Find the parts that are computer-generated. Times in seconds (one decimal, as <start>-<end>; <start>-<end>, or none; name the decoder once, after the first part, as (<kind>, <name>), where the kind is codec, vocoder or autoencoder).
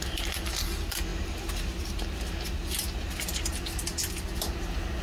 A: none